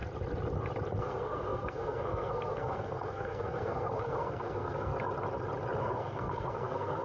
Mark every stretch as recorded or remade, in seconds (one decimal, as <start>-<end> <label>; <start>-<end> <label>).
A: 0.0-1.0 recorded; 1.0-4.9 remade; 4.9-5.8 recorded; 5.8-7.0 remade